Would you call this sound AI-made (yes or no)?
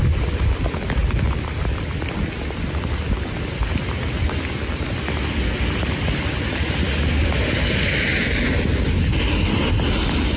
no